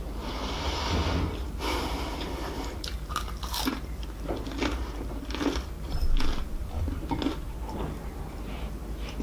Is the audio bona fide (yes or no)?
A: no